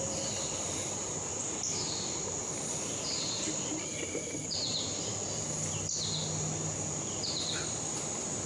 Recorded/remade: recorded